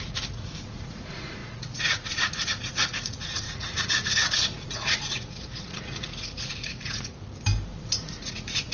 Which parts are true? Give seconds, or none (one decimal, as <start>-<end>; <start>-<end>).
7.1-7.8